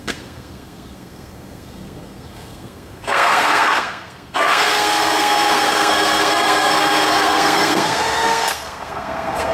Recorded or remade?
remade